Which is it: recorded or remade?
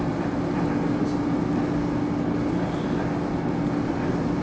recorded